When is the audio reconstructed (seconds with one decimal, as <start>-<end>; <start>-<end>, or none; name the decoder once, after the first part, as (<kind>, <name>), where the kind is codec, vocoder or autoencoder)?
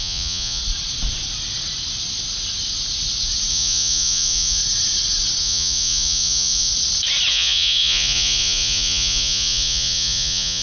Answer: 0.0-0.6 (vocoder, Vocos); 3.5-4.6; 5.4-6.7; 7.3-10.6